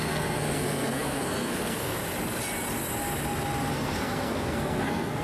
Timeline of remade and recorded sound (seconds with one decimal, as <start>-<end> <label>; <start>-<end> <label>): 0.0-2.0 remade; 2.0-3.7 recorded; 3.7-5.2 remade